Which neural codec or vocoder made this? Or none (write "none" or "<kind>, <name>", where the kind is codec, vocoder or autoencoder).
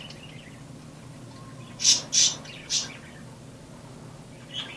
none